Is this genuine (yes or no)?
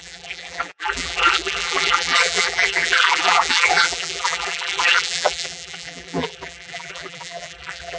no